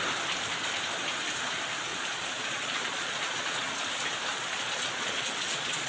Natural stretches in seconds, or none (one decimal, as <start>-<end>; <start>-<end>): 0.0-1.9; 3.9-4.3

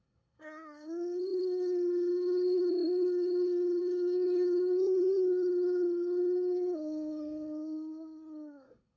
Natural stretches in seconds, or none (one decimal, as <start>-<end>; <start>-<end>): none